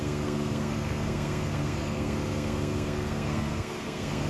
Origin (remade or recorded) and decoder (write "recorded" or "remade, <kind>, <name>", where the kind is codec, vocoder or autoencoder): remade, codec, SNAC